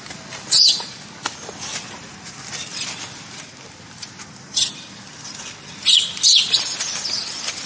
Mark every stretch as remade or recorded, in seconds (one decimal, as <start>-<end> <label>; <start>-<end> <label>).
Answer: 0.0-7.7 recorded

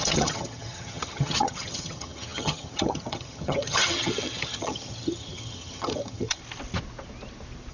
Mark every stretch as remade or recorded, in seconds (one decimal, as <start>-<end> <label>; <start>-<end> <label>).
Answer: 0.0-6.4 remade; 6.4-7.7 recorded